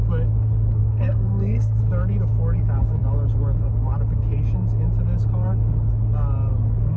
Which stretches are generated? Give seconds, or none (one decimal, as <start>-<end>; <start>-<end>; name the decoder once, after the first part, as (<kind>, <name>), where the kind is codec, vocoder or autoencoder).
0.8-1.8 (codec, SNAC)